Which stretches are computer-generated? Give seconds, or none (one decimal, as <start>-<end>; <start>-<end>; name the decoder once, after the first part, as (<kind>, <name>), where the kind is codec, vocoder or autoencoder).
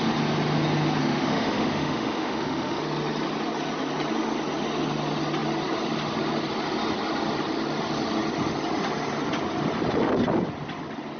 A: 1.0-2.8 (autoencoder, DAC-VAE)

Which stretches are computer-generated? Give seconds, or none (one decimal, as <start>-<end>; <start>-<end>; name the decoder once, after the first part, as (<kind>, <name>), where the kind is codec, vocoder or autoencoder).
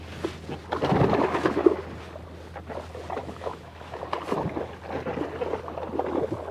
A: 3.2-4.0 (autoencoder, DAC-VAE)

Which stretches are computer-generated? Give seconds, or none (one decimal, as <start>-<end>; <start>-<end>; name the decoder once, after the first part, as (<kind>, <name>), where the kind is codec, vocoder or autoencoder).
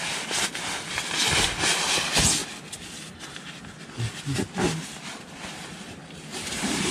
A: none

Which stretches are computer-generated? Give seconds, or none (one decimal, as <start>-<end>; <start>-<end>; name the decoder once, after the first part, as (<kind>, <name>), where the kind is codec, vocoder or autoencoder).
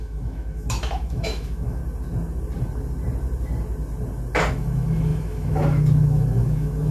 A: 0.0-1.8 (autoencoder, DAC-VAE); 4.5-6.9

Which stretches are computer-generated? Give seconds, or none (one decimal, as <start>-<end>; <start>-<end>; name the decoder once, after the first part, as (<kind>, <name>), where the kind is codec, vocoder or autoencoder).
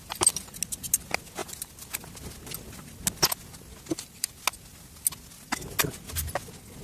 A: none